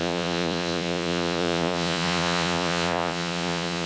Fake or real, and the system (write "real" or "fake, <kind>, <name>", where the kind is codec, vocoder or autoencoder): fake, vocoder, Vocos